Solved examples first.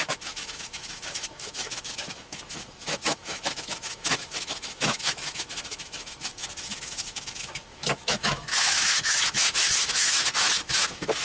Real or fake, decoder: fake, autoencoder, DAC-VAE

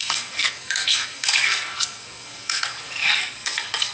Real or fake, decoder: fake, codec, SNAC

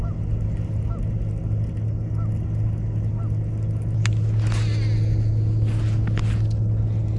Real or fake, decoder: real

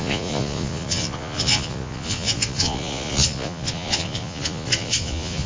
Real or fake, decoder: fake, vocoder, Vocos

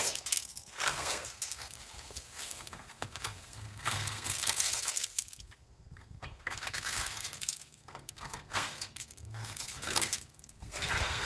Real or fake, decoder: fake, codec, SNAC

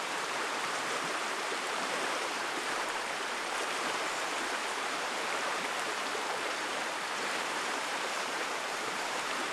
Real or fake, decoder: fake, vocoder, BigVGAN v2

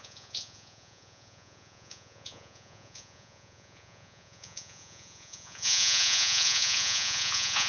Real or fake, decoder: fake, vocoder, Vocos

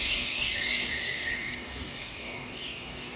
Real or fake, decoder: fake, codec, DAC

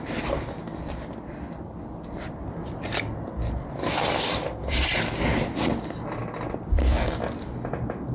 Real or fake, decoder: real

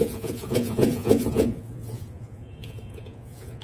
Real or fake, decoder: fake, vocoder, Vocos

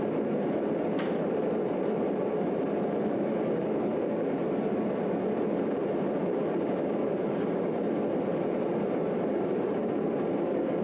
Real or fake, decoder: fake, vocoder, BigVGAN v2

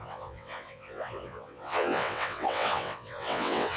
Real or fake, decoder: fake, vocoder, WaveNeXt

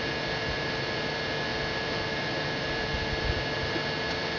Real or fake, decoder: real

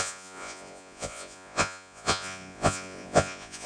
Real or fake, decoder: fake, vocoder, Vocos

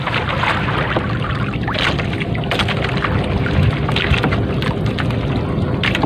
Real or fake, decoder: real